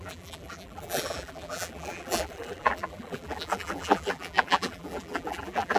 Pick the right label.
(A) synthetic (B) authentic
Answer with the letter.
A